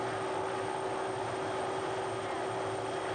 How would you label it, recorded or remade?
recorded